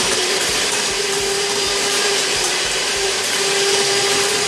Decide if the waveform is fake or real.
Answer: fake